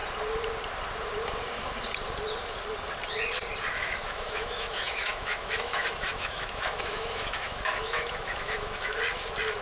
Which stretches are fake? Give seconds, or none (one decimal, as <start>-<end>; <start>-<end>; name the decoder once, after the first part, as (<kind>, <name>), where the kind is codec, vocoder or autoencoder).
3.8-9.0 (autoencoder, DAC-VAE)